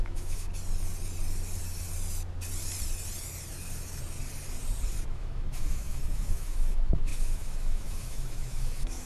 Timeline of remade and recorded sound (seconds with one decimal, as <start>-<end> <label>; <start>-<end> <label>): 0.0-0.5 remade; 0.5-5.1 recorded; 5.1-9.1 remade